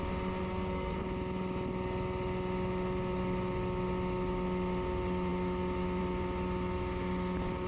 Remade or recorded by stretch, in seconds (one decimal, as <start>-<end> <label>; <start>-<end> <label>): 0.0-0.5 recorded; 0.5-1.0 remade; 1.0-7.7 recorded

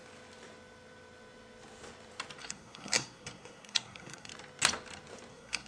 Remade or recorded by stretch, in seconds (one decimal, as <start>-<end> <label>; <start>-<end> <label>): 0.0-2.4 recorded; 2.4-4.3 remade; 4.3-5.3 recorded; 5.3-5.7 remade

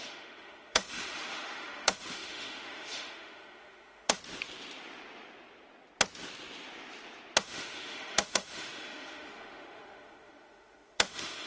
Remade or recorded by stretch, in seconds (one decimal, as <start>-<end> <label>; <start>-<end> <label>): 0.0-4.2 remade; 4.2-7.4 recorded; 7.4-11.5 remade

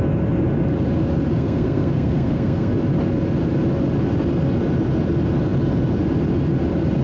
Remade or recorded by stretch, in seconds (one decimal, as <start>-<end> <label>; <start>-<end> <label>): 0.0-1.3 recorded; 1.3-2.7 remade; 2.7-7.0 recorded

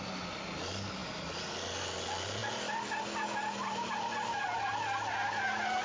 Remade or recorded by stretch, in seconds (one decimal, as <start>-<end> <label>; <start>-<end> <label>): 0.0-5.8 recorded

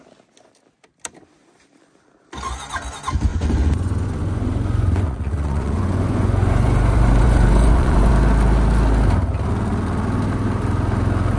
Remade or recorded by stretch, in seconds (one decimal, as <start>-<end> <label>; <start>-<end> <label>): 0.0-3.3 recorded; 3.3-8.1 remade; 8.1-11.4 recorded

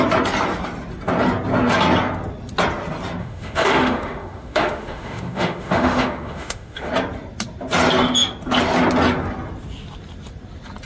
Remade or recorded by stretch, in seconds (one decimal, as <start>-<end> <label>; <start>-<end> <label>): 0.0-3.2 recorded; 3.2-6.9 remade; 6.9-10.9 recorded

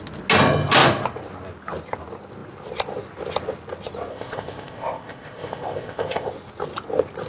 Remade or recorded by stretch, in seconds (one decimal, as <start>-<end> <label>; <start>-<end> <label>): 0.0-4.1 recorded; 4.1-6.3 remade; 6.3-7.3 recorded